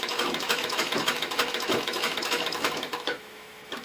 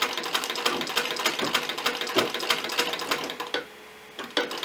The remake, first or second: first